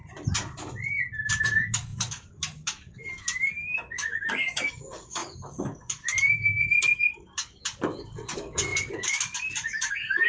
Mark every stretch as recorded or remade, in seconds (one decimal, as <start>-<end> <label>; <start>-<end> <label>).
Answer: 0.0-1.4 recorded; 1.4-10.3 remade